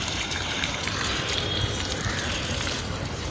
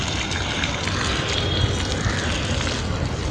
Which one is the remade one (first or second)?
first